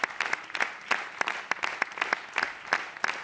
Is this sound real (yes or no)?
yes